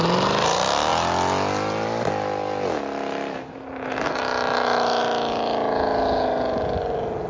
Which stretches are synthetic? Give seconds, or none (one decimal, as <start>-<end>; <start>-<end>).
none